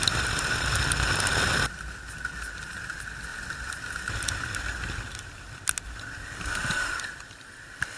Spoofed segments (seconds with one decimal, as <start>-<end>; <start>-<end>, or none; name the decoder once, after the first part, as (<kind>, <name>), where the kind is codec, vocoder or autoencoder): none